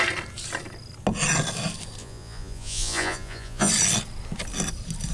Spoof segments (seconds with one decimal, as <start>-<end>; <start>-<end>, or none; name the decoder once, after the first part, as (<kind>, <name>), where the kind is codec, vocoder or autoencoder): 2.0-3.7 (vocoder, Vocos)